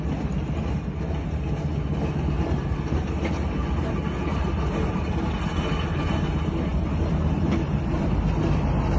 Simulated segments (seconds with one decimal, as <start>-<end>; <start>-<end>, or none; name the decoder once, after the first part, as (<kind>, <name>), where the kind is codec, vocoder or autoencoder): none